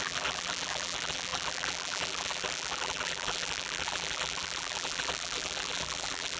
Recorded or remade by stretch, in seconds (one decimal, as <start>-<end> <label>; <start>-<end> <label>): 0.0-6.4 remade